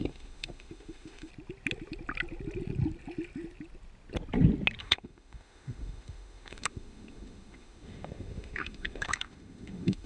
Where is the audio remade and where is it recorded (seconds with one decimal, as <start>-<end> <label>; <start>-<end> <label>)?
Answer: 0.0-1.3 remade; 1.3-4.8 recorded; 4.8-10.1 remade